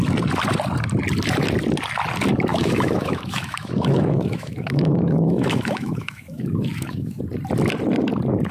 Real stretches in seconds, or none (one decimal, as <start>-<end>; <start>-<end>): 0.0-2.5; 7.2-8.5